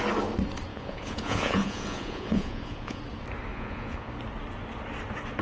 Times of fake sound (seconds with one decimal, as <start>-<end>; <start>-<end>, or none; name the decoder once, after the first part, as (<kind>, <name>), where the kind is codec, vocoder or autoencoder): 0.7-3.0 (vocoder, Vocos); 3.5-4.1